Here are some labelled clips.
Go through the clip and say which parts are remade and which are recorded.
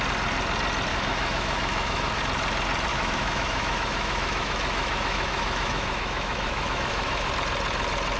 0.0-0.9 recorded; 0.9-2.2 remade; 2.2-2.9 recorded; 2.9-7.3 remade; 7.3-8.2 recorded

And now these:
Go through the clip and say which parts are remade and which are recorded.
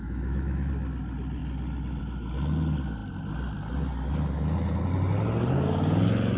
0.0-0.7 remade; 0.7-6.4 recorded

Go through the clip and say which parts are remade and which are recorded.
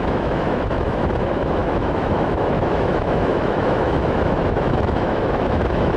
0.0-6.0 remade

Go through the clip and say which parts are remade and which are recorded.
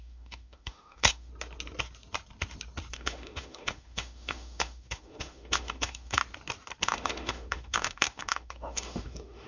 0.0-1.3 remade; 1.3-2.9 recorded; 2.9-6.2 remade; 6.2-6.8 recorded; 6.8-9.5 remade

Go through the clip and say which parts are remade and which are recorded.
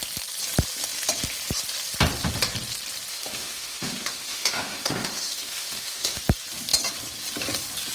0.0-3.1 recorded; 3.1-6.2 remade; 6.2-7.9 recorded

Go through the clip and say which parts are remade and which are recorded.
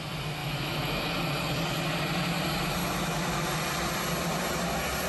0.0-0.4 recorded; 0.4-1.0 remade; 1.0-2.8 recorded; 2.8-3.5 remade; 3.5-5.1 recorded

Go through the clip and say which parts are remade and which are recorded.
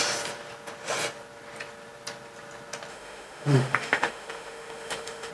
0.0-2.9 recorded; 2.9-5.3 remade